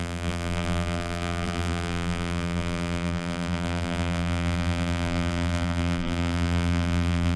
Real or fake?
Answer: fake